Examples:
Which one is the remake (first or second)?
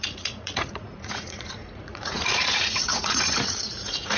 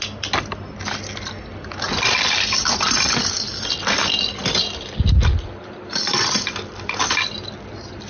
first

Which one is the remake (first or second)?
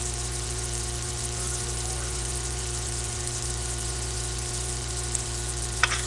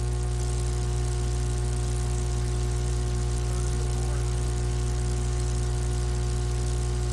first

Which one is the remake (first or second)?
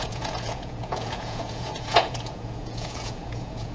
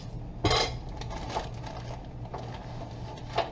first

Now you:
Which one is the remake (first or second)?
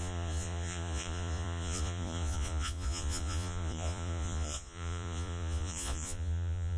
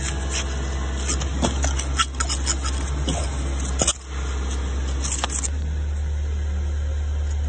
first